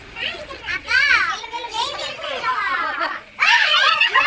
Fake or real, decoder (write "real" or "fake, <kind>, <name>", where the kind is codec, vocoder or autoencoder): fake, vocoder, Vocos